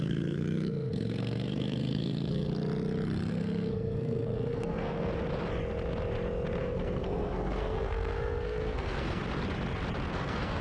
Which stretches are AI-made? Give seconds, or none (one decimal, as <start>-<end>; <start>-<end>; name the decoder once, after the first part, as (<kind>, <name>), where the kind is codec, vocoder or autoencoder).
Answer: 0.0-2.5 (codec, SNAC); 3.3-5.1; 6.6-9.2; 10.1-10.6